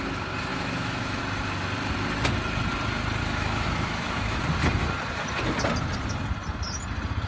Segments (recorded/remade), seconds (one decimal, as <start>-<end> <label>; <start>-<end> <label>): 0.0-0.5 recorded; 0.5-1.2 remade; 1.2-3.2 recorded; 3.2-4.4 remade; 4.4-7.3 recorded